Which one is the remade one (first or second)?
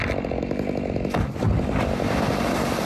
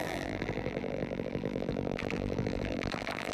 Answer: second